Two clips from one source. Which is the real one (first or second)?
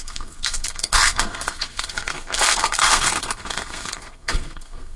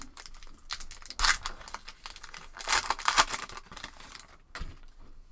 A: second